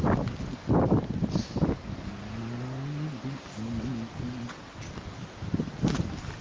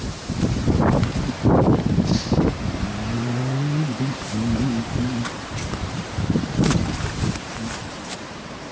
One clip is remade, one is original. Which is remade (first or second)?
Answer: second